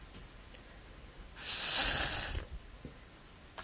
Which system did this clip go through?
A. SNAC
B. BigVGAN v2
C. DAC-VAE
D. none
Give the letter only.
D